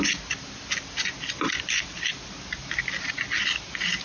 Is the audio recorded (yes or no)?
yes